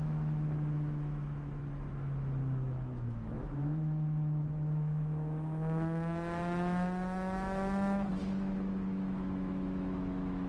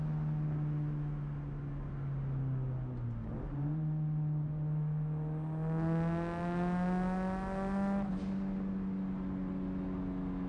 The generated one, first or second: first